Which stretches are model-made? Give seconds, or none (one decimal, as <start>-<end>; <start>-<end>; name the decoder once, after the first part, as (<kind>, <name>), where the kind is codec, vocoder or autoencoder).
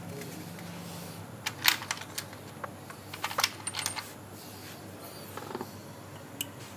none